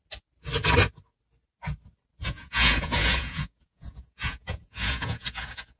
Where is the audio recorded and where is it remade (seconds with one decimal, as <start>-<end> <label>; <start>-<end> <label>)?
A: 0.0-2.2 recorded; 2.2-5.8 remade